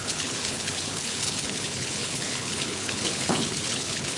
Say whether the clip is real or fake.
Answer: fake